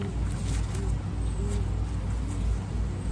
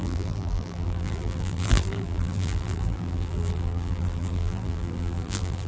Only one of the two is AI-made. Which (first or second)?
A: second